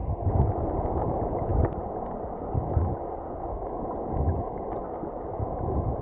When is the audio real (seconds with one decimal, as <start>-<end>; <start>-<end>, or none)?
0.0-0.5; 1.5-5.1